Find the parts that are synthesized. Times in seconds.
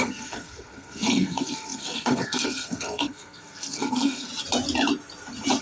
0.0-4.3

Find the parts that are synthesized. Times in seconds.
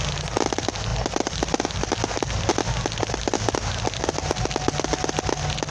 none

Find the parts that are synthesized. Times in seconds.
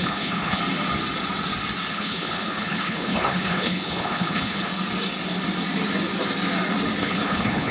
0.0-0.6; 1.9-4.7; 7.0-7.7